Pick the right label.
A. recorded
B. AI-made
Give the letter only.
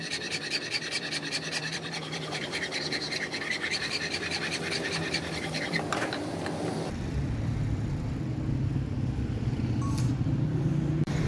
B